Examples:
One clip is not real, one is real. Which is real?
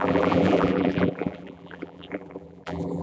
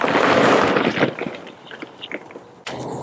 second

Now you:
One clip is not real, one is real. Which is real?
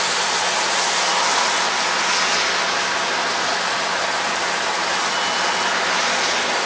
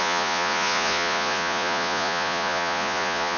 first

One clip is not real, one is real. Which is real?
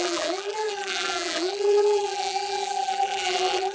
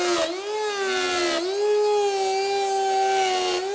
second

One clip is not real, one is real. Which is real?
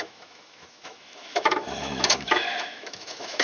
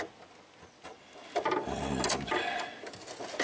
second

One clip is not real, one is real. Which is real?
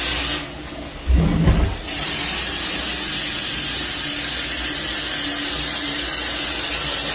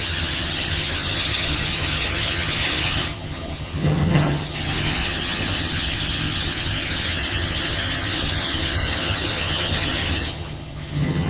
first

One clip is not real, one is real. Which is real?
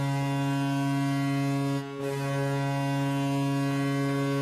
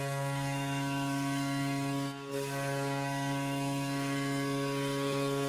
first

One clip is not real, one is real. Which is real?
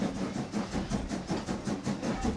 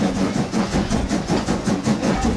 first